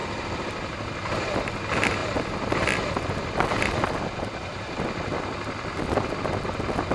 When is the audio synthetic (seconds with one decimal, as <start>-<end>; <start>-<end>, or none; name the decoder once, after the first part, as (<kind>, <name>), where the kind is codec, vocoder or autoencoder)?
none